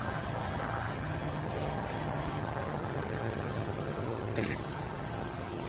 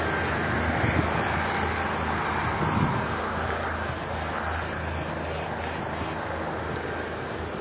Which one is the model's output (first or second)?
first